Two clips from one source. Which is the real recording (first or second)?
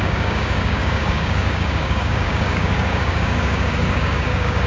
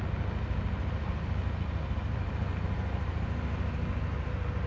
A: second